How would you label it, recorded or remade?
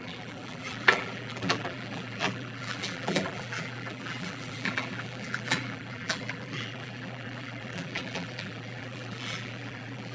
remade